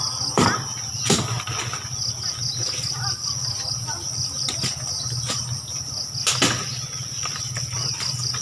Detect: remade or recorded recorded